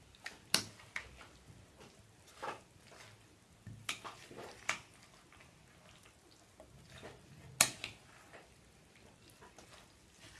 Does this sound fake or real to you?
real